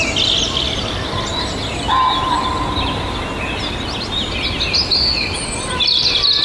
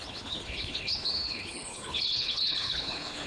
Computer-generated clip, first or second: second